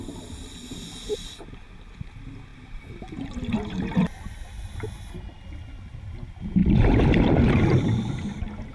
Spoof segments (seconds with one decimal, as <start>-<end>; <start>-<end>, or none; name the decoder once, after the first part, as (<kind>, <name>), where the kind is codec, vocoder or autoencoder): 2.5-5.3 (vocoder, BigVGAN v2)